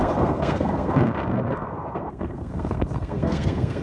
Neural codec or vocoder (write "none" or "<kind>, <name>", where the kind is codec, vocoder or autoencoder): codec, SNAC